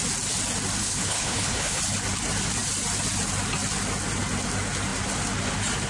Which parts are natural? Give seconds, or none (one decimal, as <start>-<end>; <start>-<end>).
0.0-0.8; 1.8-5.9